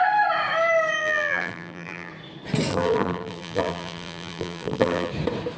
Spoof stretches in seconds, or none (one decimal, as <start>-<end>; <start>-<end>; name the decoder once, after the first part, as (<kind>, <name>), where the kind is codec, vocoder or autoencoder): 1.0-2.1 (vocoder, BigVGAN v2); 2.7-5.1